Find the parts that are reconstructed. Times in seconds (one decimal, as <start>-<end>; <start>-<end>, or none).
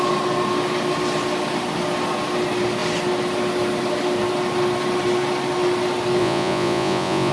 6.2-7.3